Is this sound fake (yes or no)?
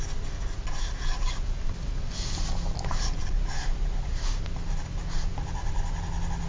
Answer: no